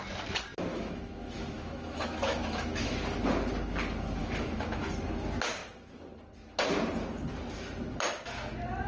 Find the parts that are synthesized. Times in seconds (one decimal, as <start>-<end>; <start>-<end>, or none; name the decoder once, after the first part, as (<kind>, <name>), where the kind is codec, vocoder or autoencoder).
0.7-2.9 (autoencoder, DAC-VAE); 4.2-4.8